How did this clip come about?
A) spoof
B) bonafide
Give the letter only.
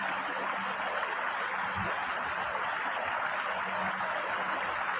B